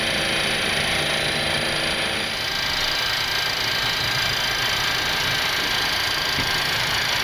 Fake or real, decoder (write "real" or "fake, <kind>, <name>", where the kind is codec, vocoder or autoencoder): real